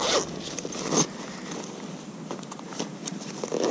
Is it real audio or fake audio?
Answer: real